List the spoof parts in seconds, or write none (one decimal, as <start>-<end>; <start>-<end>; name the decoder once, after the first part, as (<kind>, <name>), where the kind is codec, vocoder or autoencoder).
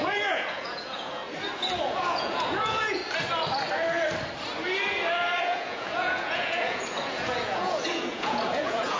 0.0-1.2 (vocoder, Vocos); 1.8-3.0; 5.4-9.0